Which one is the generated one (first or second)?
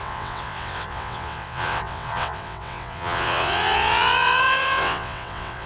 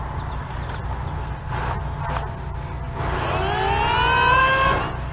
first